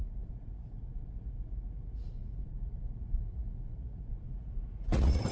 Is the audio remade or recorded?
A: remade